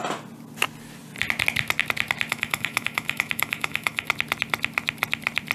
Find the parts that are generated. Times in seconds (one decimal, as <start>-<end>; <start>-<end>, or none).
2.3-4.1